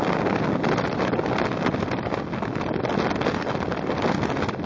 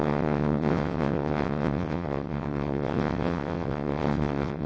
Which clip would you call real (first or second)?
first